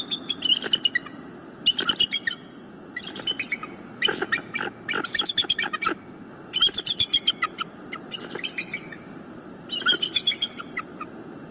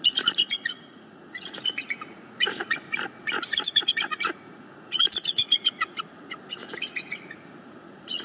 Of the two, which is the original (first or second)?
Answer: first